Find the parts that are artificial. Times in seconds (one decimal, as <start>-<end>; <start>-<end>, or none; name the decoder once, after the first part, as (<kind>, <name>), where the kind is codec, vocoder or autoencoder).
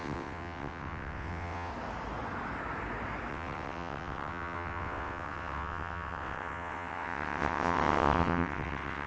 0.0-1.7 (vocoder, WaveNeXt); 3.3-9.1